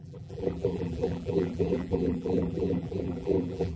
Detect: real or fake fake